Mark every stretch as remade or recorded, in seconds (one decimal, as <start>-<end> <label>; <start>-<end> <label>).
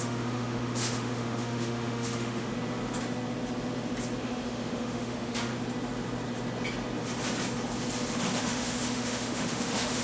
0.0-2.5 remade; 2.5-4.2 recorded; 4.2-5.5 remade; 5.5-8.4 recorded; 8.4-10.0 remade